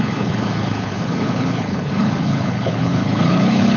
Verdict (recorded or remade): remade